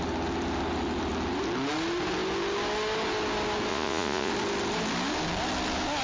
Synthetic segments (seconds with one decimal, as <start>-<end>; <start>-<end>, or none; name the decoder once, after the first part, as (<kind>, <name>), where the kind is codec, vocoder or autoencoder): 3.7-4.3 (vocoder, Vocos)